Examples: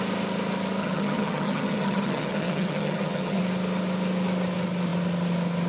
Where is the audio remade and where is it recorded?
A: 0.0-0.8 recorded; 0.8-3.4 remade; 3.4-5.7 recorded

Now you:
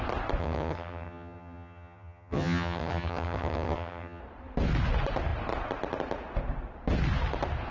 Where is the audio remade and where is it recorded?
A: 0.0-0.4 recorded; 0.4-4.2 remade; 4.2-7.7 recorded

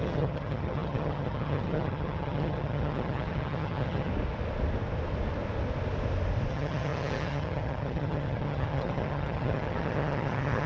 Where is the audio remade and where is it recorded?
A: 0.0-4.1 remade; 4.1-6.5 recorded; 6.5-10.7 remade